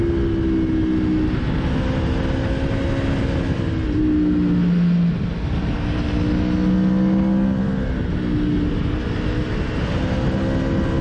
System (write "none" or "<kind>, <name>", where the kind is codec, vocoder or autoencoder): none